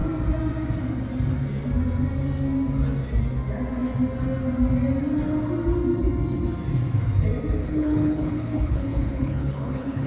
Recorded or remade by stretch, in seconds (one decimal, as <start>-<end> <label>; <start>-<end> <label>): 0.0-7.6 recorded; 7.6-10.1 remade